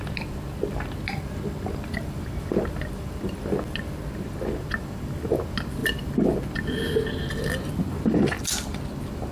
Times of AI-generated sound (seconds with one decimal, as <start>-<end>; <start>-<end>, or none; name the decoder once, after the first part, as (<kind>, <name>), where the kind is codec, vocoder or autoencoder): none